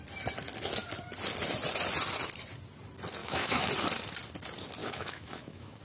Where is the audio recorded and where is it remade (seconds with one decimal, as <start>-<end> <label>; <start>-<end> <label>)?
0.0-3.2 recorded; 3.2-3.7 remade; 3.7-4.8 recorded; 4.8-5.8 remade